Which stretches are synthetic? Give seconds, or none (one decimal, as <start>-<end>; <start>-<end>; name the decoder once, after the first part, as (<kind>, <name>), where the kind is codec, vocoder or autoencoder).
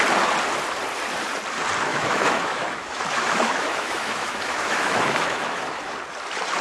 1.9-5.9 (autoencoder, DAC-VAE)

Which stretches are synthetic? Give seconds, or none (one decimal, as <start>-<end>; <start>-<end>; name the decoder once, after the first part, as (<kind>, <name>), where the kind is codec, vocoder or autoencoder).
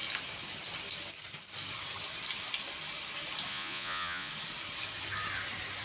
3.5-4.3 (vocoder, Vocos)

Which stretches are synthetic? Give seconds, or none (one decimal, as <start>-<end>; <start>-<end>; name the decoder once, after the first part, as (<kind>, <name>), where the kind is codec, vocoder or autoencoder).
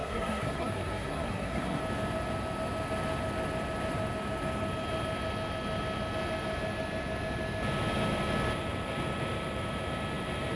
0.0-1.8 (codec, SNAC)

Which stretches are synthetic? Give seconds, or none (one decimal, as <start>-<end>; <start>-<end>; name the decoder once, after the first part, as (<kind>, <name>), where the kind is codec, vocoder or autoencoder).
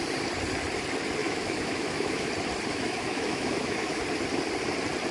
1.2-2.3 (autoencoder, DAC-VAE); 2.7-4.0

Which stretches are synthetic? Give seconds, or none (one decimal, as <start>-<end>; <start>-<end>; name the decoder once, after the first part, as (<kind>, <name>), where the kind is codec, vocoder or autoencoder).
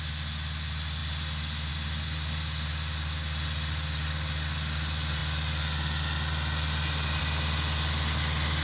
none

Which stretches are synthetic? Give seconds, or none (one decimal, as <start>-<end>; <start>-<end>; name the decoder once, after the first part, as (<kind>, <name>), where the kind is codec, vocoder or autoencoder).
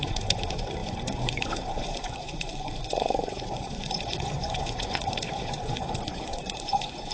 0.0-7.1 (vocoder, Vocos)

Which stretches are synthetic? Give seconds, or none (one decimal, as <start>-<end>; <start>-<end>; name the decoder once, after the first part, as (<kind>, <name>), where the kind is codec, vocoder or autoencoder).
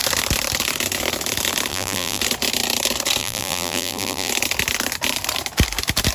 1.7-2.2 (vocoder, BigVGAN v2); 3.2-4.3